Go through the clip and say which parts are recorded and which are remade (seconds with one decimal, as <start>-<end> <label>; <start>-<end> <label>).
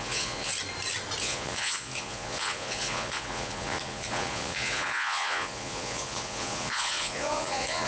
0.0-0.5 remade; 0.5-1.2 recorded; 1.2-7.9 remade